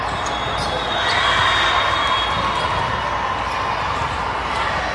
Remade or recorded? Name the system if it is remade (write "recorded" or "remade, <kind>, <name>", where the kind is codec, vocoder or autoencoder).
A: recorded